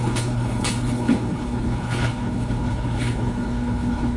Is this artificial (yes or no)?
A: yes